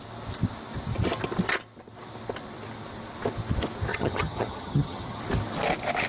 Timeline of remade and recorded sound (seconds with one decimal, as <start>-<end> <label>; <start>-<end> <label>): 0.0-3.9 recorded; 3.9-5.2 remade; 5.2-6.1 recorded